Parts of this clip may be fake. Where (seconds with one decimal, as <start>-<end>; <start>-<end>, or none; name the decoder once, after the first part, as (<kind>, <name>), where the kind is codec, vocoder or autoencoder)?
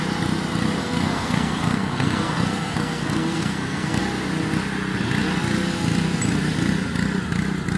0.8-4.0 (codec, SNAC)